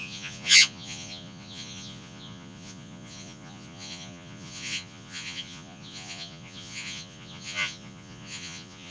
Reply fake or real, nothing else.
fake